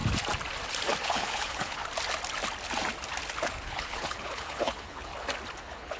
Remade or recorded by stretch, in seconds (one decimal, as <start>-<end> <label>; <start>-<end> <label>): 0.0-1.0 recorded; 1.0-1.8 remade; 1.8-3.4 recorded; 3.4-5.1 remade; 5.1-5.6 recorded; 5.6-6.0 remade

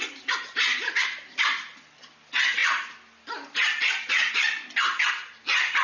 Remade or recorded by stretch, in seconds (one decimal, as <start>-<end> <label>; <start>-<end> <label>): 0.0-5.8 recorded

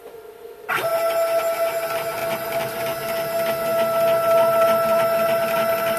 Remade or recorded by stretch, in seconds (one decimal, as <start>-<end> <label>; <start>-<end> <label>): 0.0-2.2 recorded; 2.2-2.8 remade; 2.8-3.7 recorded; 3.7-5.4 remade; 5.4-6.0 recorded

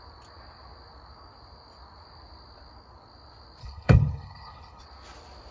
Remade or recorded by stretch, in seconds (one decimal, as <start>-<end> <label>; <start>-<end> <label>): 0.0-3.6 recorded; 3.6-4.8 remade; 4.8-5.5 recorded

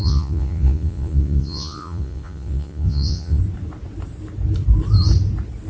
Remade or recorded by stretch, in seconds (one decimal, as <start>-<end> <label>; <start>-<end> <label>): 0.0-3.4 remade; 3.4-5.7 recorded

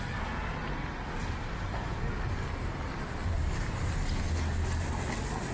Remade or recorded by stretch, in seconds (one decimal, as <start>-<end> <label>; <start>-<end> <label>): 0.0-5.5 recorded